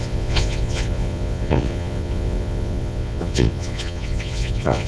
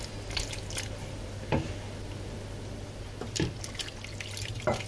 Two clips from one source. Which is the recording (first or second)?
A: second